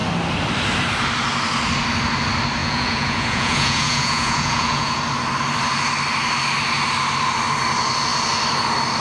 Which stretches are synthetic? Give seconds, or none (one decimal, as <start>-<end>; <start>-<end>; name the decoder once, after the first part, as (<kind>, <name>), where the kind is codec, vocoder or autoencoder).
2.6-5.0 (vocoder, Vocos)